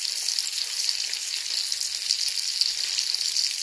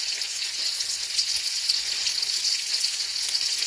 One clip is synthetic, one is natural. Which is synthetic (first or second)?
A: second